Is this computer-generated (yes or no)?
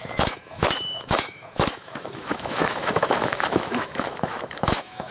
yes